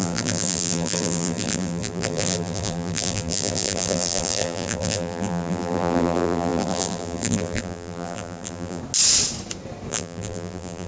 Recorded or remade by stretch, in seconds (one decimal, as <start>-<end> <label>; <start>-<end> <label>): 0.0-8.8 remade; 8.8-9.9 recorded; 9.9-10.9 remade